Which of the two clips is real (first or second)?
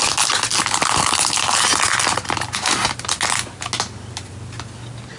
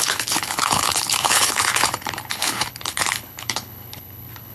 first